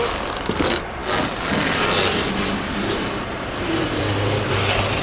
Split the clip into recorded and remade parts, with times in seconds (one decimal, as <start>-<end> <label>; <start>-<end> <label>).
0.0-5.0 recorded